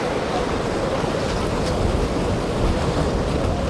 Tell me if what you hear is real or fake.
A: real